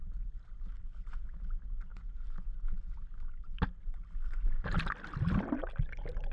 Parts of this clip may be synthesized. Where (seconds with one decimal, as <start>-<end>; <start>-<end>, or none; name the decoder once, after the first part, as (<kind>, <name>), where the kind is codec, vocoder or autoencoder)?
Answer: none